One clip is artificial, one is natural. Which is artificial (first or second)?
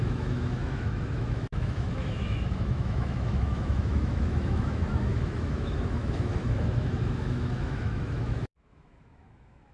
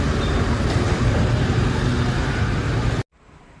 first